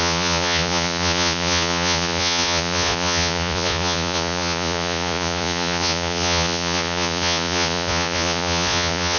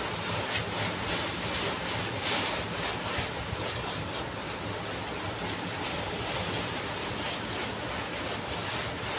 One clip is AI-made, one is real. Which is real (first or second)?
second